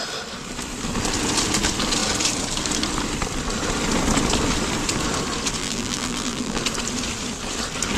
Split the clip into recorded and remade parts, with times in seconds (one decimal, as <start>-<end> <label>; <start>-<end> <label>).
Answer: 0.0-5.6 recorded; 5.6-6.6 remade; 6.6-8.0 recorded